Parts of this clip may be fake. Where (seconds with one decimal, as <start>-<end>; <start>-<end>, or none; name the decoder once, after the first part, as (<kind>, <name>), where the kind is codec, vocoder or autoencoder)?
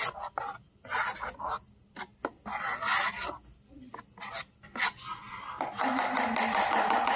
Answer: none